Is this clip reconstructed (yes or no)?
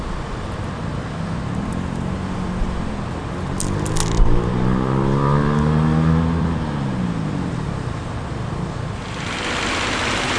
no